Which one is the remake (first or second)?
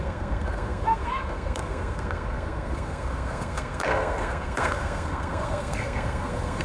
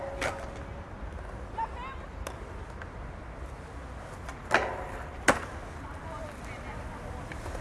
first